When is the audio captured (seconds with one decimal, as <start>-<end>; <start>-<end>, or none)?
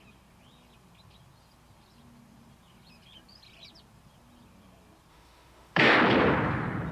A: 0.0-5.1; 5.9-6.9